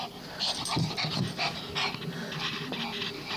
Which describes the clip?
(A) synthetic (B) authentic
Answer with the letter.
B